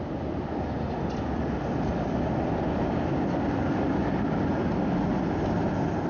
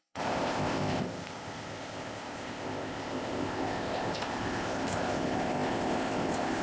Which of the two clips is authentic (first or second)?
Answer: first